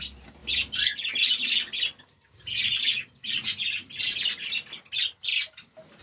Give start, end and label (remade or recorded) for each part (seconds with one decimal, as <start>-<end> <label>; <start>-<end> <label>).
0.0-6.0 recorded